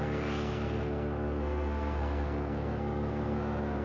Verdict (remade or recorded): remade